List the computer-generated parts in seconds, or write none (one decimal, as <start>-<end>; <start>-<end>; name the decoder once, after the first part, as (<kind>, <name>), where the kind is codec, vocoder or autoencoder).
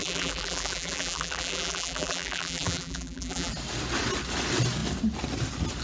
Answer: 0.0-3.5 (vocoder, BigVGAN v2)